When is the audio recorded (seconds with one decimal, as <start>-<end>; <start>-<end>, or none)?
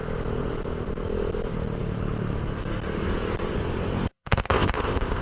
0.0-4.1